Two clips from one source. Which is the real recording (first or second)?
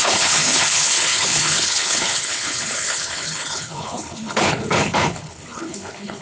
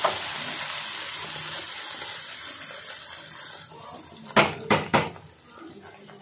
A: second